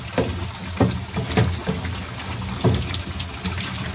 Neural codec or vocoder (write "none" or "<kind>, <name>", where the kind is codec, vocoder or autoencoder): none